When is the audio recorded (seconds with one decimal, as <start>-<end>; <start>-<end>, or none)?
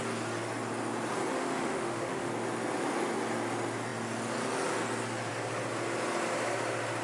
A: 0.0-1.3; 2.3-7.0